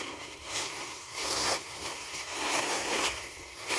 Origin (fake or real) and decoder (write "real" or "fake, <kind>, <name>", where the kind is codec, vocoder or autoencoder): fake, codec, SNAC